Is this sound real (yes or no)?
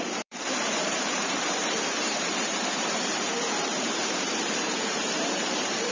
no